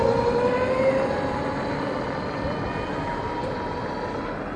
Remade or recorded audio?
recorded